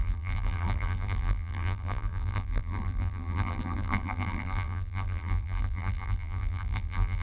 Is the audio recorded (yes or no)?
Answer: no